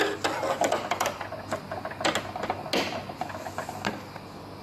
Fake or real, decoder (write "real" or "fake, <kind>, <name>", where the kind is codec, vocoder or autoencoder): real